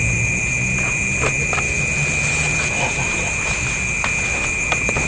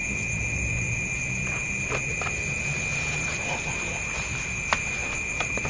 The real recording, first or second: first